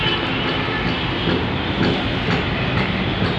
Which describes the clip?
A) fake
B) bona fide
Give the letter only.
B